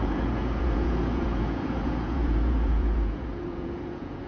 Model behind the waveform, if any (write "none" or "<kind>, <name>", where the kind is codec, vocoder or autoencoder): vocoder, Vocos